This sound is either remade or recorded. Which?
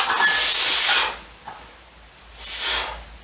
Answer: recorded